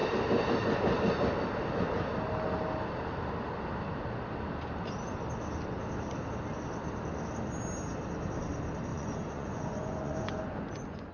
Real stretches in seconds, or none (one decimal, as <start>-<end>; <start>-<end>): 0.0-8.9